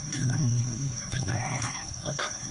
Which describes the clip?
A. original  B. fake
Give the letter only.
B